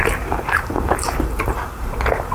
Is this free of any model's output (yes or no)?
no